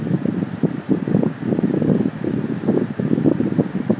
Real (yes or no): no